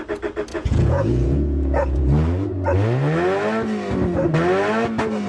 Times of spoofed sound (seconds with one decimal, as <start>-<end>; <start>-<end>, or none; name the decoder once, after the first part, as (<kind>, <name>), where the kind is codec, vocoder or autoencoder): 0.5-2.0 (vocoder, Vocos)